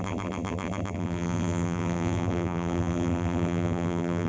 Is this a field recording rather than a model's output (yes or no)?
no